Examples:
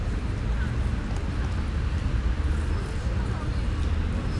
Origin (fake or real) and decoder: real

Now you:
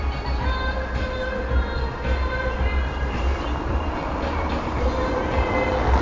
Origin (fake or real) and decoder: real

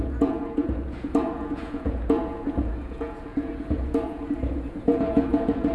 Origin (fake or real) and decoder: fake, vocoder, Vocos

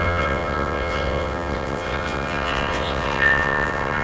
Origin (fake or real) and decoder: fake, vocoder, WaveNeXt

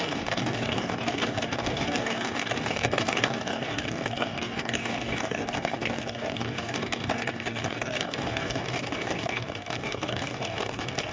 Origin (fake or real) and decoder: fake, codec, DAC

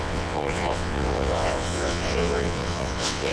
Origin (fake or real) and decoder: fake, vocoder, WaveNeXt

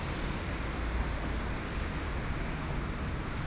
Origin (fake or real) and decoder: real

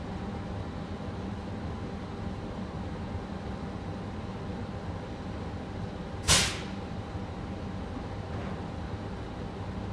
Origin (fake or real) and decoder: real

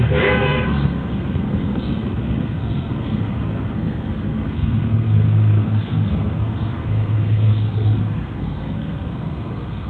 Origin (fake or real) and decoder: fake, codec, SNAC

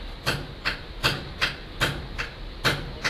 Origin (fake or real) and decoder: real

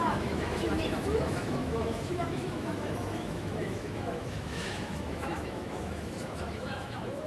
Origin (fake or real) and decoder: fake, autoencoder, DAC-VAE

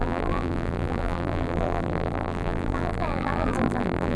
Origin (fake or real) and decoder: fake, vocoder, BigVGAN v2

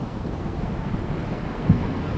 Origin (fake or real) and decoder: fake, codec, SNAC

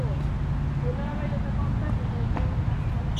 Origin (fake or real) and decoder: real